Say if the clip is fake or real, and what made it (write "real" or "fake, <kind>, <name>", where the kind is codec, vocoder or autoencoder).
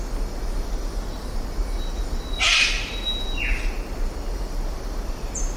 real